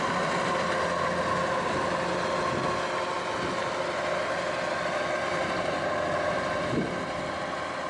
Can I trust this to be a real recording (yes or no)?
yes